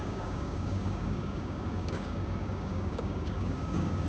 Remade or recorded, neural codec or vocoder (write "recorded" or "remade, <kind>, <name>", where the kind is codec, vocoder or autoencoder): remade, codec, DAC